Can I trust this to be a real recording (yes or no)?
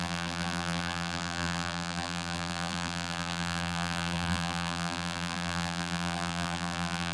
no